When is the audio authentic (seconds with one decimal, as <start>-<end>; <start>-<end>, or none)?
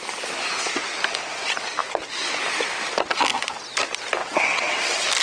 0.0-4.2; 4.8-5.2